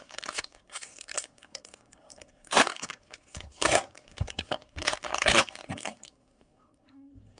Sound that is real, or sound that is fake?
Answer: fake